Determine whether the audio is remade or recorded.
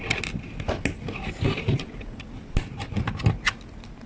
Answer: recorded